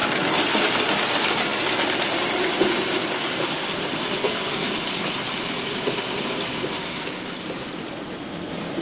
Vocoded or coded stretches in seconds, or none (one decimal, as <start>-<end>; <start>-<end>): 0.0-0.7; 4.2-4.7; 6.8-7.4

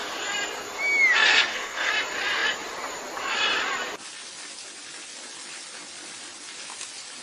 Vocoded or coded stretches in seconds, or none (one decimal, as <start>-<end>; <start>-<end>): 1.3-1.9